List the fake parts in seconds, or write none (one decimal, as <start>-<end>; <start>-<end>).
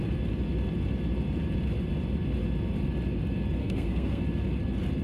3.6-4.2